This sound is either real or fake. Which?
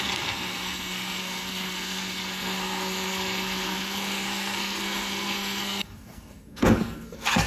fake